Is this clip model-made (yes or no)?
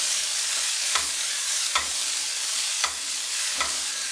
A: yes